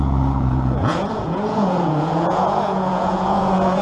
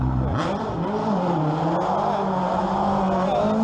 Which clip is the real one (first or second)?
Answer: second